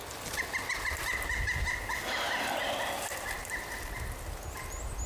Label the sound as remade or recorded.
recorded